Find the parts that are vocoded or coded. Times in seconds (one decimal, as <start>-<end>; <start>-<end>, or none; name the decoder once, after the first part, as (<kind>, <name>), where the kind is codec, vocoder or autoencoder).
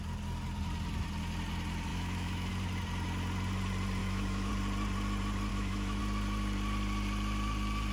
1.9-2.5 (autoencoder, DAC-VAE); 4.0-4.5; 5.5-6.0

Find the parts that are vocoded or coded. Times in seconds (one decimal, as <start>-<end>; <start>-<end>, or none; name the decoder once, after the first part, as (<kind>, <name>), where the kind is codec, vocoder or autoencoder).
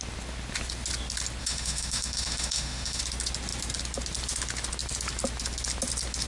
1.4-3.0 (autoencoder, DAC-VAE)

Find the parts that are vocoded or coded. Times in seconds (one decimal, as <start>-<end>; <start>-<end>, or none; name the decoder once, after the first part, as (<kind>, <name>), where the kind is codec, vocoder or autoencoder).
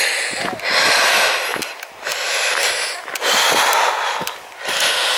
none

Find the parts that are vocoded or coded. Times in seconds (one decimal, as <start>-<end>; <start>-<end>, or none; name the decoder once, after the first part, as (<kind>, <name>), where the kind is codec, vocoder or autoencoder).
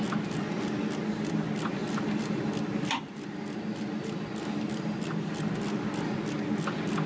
none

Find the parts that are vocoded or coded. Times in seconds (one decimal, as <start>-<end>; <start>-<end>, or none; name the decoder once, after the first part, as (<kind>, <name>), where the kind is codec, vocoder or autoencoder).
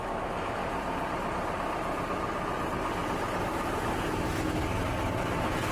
0.0-0.6 (autoencoder, DAC-VAE); 4.0-4.6; 5.2-5.7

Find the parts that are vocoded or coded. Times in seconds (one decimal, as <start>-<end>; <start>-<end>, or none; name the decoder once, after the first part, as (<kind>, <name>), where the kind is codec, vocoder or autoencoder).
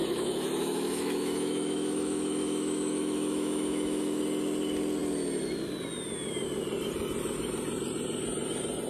0.0-4.2 (autoencoder, DAC-VAE)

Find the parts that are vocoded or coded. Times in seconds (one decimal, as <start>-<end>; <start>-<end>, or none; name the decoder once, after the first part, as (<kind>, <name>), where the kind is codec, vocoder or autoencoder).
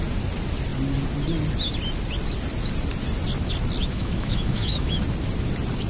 3.8-5.0 (autoencoder, DAC-VAE)